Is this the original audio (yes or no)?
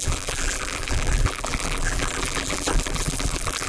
no